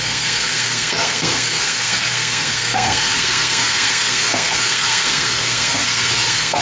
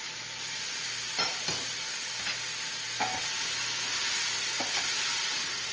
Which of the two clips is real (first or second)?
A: second